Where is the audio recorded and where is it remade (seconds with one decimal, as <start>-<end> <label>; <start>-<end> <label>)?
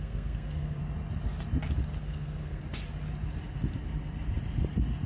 0.0-0.8 remade; 0.8-2.0 recorded; 2.0-2.6 remade; 2.6-5.1 recorded